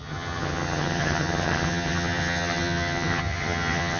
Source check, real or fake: fake